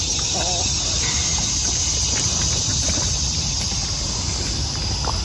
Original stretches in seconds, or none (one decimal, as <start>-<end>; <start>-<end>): 0.0-5.2